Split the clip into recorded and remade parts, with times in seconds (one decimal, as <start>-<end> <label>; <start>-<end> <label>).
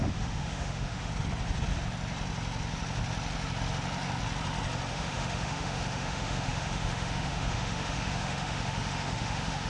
0.0-1.1 remade; 1.1-4.9 recorded; 4.9-9.7 remade